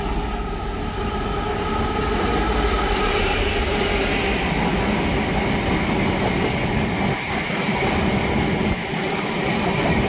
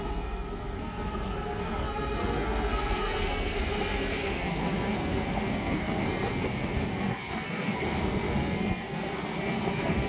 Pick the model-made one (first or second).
second